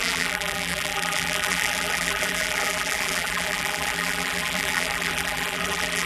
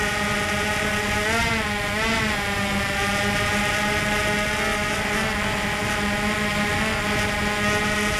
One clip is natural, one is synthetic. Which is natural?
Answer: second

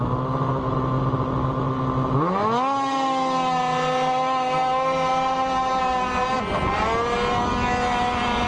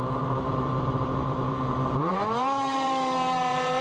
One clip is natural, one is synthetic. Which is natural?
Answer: first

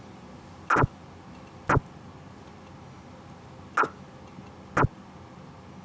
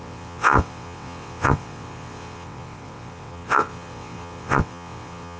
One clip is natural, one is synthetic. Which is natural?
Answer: first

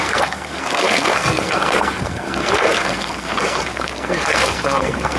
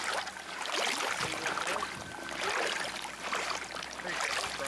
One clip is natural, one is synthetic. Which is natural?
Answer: second